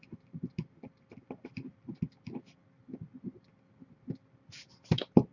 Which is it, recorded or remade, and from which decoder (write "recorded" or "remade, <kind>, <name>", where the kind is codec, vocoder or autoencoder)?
recorded